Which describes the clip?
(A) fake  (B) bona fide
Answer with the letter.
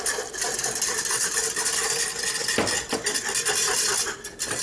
B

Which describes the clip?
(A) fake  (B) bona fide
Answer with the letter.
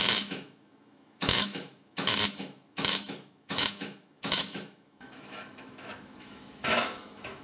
A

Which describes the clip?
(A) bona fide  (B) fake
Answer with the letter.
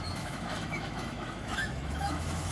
B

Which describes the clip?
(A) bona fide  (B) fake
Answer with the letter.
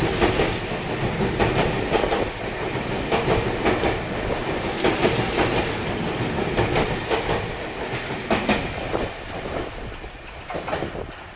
A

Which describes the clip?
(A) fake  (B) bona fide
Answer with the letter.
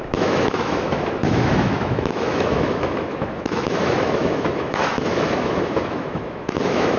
A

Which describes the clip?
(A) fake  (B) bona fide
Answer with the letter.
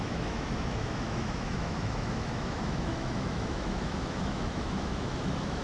A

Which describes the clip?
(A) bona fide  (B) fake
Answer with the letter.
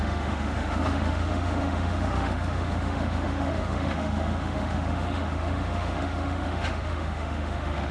B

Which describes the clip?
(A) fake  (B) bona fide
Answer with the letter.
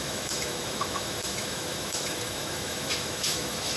A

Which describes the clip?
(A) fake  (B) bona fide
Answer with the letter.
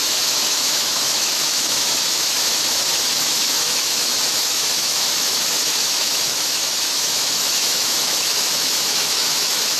A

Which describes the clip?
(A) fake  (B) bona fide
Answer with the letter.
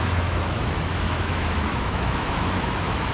A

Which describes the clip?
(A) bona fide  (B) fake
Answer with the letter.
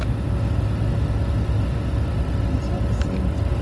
A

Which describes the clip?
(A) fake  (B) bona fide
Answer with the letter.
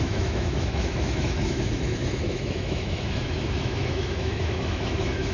A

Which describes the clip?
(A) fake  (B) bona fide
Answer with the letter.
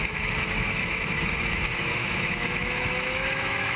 A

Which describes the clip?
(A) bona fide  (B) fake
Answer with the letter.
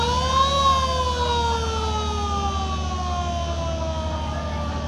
A